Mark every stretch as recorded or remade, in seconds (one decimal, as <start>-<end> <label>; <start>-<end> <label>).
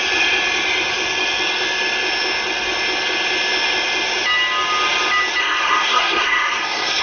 0.0-5.4 recorded; 5.4-7.0 remade